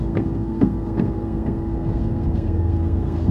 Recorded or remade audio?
remade